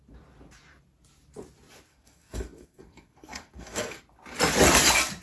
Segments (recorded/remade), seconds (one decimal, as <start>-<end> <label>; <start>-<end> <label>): 0.0-1.9 recorded; 1.9-4.0 remade; 4.0-5.2 recorded